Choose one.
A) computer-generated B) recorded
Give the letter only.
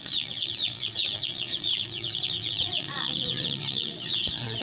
A